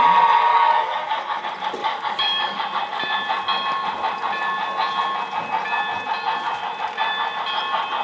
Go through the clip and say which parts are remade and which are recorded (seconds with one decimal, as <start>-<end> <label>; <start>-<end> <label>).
0.0-0.5 recorded; 0.5-1.4 remade; 1.4-1.8 recorded; 1.8-2.6 remade; 2.6-8.0 recorded